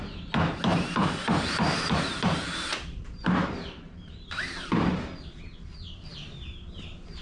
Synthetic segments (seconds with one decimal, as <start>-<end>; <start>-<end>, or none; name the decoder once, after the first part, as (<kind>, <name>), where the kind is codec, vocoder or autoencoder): 0.7-5.0 (vocoder, BigVGAN v2)